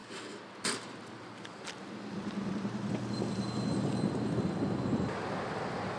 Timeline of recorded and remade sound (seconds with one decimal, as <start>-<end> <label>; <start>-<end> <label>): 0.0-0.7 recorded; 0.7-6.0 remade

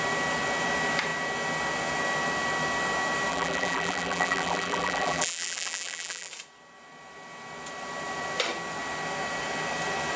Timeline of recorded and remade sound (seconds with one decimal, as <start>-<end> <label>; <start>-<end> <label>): 0.0-3.3 recorded; 3.3-6.3 remade; 6.3-10.2 recorded

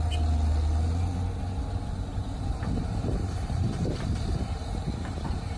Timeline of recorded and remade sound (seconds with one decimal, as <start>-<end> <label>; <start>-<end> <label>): 0.0-2.1 recorded; 2.1-5.6 remade

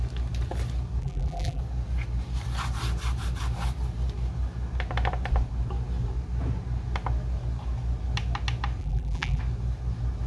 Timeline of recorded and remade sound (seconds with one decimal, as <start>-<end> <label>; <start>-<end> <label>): 0.0-1.0 recorded; 1.0-1.6 remade; 1.6-8.8 recorded; 8.8-9.4 remade; 9.4-10.3 recorded

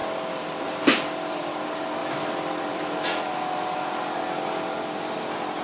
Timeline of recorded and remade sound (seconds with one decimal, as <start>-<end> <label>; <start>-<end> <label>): 0.0-0.6 remade; 0.6-2.0 recorded; 2.0-3.3 remade; 3.3-5.6 recorded

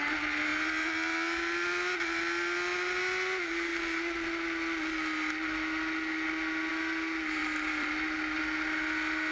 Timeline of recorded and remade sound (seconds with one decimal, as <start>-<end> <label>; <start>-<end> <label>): 0.0-7.4 recorded; 7.4-8.4 remade; 8.4-9.3 recorded

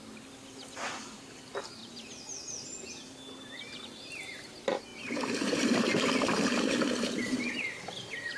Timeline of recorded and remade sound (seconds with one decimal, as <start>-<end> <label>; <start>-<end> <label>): 0.0-1.8 remade; 1.8-3.8 recorded; 3.8-8.4 remade